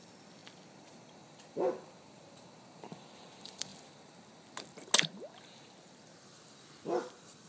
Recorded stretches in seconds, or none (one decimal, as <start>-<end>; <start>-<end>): 0.4-3.0; 3.7-5.9